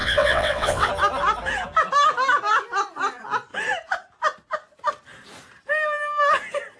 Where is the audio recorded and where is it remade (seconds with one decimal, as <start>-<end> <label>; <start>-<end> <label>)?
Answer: 0.0-0.9 remade; 0.9-6.8 recorded